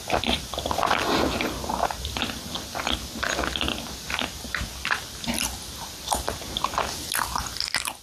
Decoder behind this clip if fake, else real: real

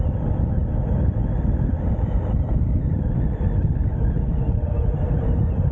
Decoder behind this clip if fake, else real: real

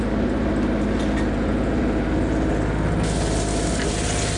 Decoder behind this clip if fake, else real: real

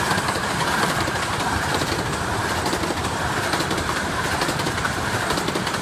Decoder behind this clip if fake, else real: fake, vocoder, BigVGAN v2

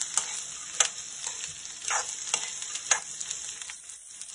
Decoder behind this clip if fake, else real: real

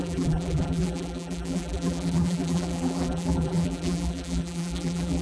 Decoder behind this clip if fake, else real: fake, vocoder, BigVGAN v2